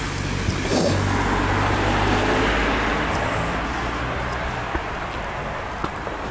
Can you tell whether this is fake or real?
real